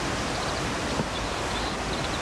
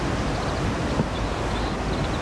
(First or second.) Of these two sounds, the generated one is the first